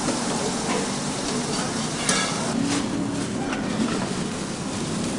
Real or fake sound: real